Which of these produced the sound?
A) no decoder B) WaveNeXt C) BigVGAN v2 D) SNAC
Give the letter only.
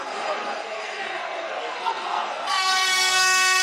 D